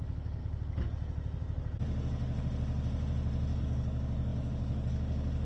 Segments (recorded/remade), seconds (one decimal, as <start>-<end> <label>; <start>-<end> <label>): 0.0-0.4 remade; 0.4-3.6 recorded; 3.6-5.5 remade

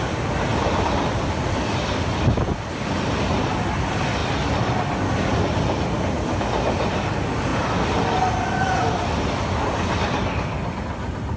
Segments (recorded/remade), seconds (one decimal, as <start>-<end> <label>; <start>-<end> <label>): 0.0-11.4 recorded

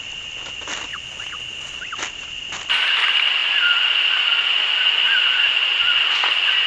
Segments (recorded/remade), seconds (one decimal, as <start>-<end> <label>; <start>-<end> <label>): 0.0-0.9 recorded; 0.9-1.8 remade; 1.8-5.7 recorded; 5.7-6.3 remade; 6.3-6.7 recorded

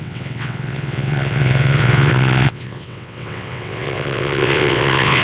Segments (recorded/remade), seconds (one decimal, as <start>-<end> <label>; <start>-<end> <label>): 0.0-5.2 remade

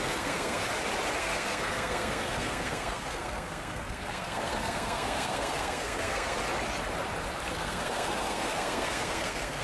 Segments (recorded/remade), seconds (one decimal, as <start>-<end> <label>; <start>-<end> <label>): 0.0-0.6 remade; 0.6-1.2 recorded; 1.2-6.4 remade; 6.4-7.5 recorded; 7.5-9.6 remade

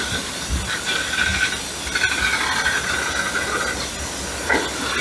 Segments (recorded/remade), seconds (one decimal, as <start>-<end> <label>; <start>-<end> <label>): 0.0-5.0 recorded